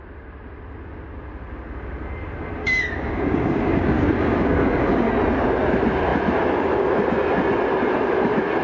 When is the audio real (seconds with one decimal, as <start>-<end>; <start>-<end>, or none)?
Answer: 0.0-2.6; 5.1-8.6